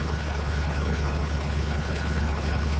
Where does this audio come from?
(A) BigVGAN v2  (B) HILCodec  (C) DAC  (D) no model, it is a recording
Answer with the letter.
B